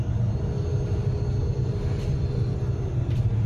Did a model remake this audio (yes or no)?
no